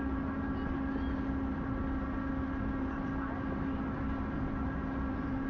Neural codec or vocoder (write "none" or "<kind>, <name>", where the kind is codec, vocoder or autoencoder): none